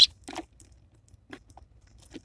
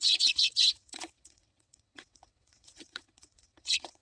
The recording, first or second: first